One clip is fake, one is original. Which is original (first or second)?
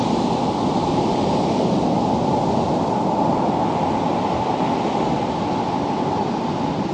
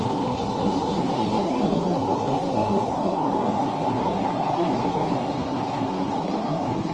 first